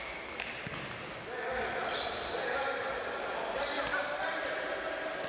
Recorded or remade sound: recorded